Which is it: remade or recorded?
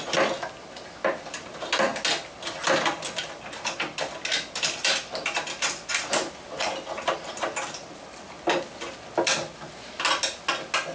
recorded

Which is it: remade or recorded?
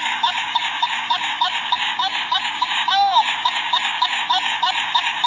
remade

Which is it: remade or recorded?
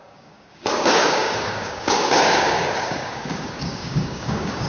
remade